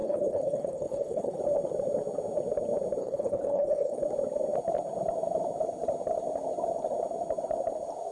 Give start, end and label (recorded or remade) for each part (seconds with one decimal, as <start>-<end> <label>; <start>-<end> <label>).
0.0-1.4 remade; 1.4-3.0 recorded; 3.0-4.0 remade; 4.0-8.1 recorded